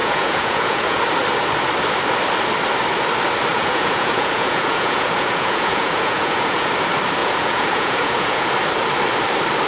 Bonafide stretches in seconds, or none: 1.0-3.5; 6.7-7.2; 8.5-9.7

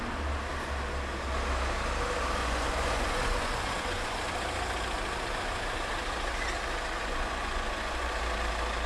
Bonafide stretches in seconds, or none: 0.0-2.4; 4.2-7.0; 8.1-8.9

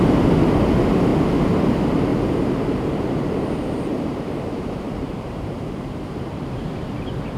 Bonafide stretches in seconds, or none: 0.0-2.1; 6.5-7.4

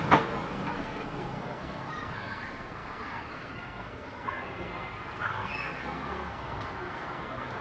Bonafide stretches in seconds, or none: none

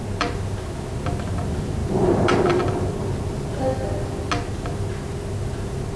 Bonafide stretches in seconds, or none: 0.0-6.0

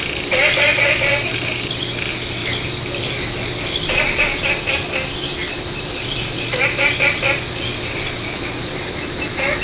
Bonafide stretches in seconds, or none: 0.0-5.4; 8.9-9.6

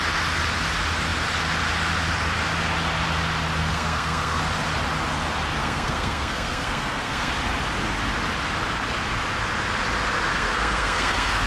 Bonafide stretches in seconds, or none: 0.0-3.7; 4.4-5.6; 7.3-10.3

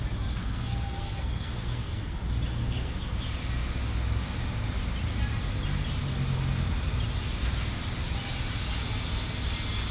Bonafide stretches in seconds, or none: 0.0-0.4; 2.2-2.6; 3.1-9.9